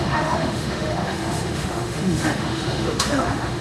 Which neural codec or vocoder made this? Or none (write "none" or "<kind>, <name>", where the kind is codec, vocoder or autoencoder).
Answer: autoencoder, DAC-VAE